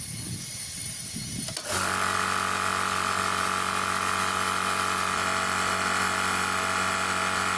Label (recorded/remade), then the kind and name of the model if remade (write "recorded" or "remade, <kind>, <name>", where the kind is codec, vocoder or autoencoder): recorded